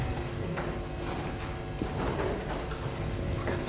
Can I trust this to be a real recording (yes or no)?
yes